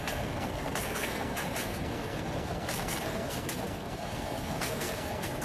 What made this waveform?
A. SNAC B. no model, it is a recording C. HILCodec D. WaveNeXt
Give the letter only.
A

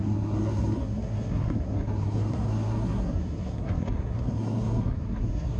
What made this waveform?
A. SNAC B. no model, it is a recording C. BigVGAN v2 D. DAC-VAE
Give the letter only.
A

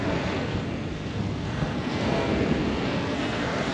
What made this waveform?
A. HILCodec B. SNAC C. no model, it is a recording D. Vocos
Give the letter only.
B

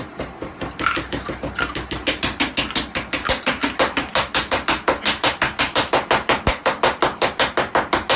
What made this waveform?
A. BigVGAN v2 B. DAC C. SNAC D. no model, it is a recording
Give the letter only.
D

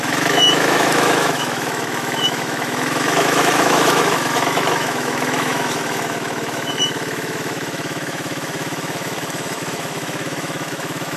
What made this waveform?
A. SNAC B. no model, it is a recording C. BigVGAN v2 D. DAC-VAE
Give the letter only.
D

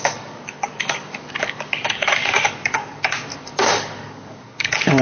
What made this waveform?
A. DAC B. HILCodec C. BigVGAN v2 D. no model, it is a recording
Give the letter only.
A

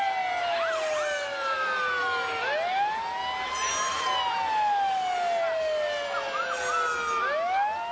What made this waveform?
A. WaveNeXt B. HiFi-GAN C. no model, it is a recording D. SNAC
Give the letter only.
C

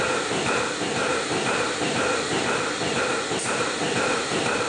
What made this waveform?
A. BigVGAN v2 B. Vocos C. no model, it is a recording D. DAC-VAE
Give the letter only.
C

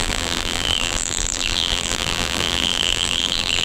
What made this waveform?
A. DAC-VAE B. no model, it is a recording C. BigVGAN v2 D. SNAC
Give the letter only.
C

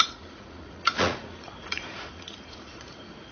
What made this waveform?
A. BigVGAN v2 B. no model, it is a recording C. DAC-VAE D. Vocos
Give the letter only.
D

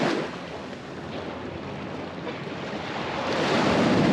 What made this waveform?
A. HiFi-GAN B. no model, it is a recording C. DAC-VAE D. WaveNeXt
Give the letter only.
B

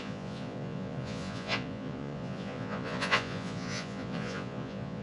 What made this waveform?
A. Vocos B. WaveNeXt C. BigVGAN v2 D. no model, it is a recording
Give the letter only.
A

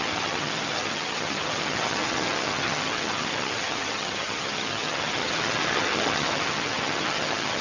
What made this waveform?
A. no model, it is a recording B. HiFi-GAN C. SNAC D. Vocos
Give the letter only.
B